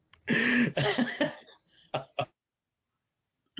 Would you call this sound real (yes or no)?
yes